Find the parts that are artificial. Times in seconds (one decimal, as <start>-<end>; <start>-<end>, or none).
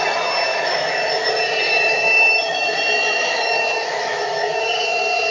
0.5-1.3; 1.9-5.3